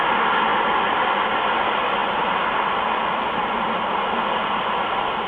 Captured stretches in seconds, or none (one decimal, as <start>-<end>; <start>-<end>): 0.0-2.0; 3.9-4.4